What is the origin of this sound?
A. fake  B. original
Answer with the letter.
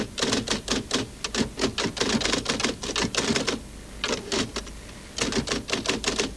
B